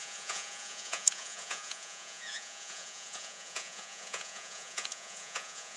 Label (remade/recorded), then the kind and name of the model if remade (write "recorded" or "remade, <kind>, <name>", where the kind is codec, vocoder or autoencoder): remade, vocoder, Vocos